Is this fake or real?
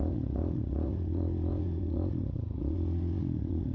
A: fake